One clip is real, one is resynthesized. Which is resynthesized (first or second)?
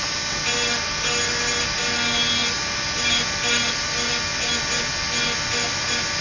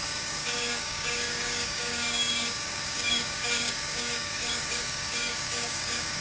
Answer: second